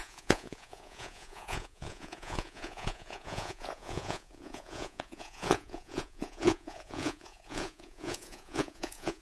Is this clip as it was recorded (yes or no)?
no